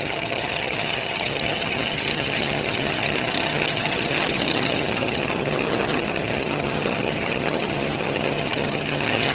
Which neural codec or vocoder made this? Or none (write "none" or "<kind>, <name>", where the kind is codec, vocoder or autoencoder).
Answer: vocoder, HiFi-GAN